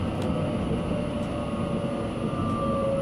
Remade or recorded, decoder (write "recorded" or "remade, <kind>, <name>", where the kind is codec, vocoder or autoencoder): recorded